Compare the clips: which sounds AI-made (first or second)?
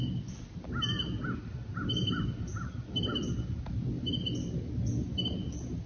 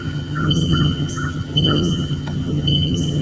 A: second